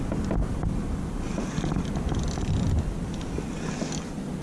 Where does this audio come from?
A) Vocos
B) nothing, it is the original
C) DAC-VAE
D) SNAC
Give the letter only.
B